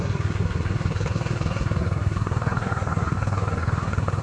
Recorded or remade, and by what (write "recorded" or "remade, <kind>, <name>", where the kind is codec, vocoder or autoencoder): remade, codec, SNAC